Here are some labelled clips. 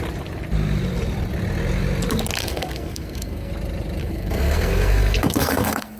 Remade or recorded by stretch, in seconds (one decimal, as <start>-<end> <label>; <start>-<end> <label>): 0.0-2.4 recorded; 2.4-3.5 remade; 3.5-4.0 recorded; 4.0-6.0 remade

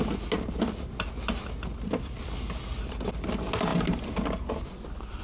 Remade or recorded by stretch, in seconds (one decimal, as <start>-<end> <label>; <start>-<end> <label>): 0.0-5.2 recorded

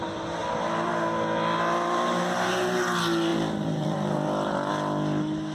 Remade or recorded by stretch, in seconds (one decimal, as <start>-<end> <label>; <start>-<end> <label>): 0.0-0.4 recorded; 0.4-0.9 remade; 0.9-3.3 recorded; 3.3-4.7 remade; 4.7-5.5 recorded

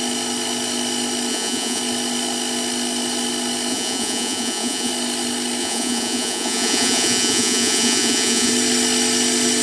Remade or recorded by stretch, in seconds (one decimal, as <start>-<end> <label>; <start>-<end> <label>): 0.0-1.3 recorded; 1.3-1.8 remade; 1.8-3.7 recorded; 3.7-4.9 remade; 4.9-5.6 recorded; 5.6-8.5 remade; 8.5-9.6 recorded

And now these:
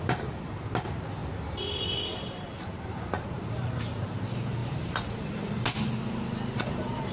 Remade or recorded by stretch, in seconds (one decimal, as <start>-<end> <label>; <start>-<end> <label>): 0.0-4.6 remade; 4.6-6.6 recorded; 6.6-7.1 remade

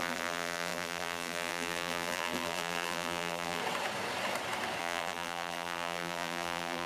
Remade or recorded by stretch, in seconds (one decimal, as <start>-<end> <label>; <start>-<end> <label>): 0.0-3.6 remade; 3.6-4.8 recorded; 4.8-6.9 remade

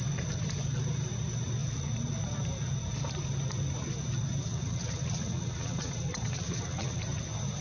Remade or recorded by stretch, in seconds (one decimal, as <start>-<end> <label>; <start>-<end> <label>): 0.0-4.4 recorded; 4.4-7.0 remade; 7.0-7.6 recorded

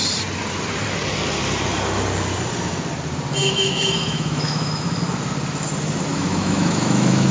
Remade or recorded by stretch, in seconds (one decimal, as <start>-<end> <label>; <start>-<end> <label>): 0.0-3.4 recorded; 3.4-5.0 remade; 5.0-6.1 recorded; 6.1-7.3 remade